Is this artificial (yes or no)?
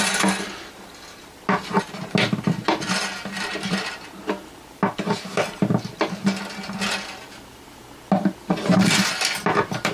no